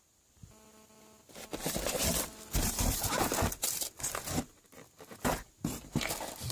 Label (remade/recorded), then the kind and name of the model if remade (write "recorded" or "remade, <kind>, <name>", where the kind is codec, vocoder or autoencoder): recorded